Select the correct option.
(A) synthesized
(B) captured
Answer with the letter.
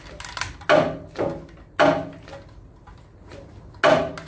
B